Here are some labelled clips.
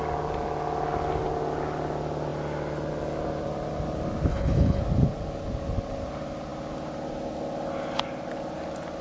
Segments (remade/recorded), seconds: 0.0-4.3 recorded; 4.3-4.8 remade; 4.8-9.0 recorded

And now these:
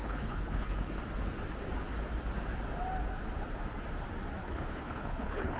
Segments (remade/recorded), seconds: 0.0-1.0 remade; 1.0-4.4 recorded; 4.4-5.6 remade